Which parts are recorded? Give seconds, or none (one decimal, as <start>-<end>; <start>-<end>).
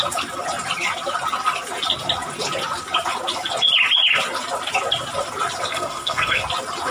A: 0.0-5.7; 6.4-6.9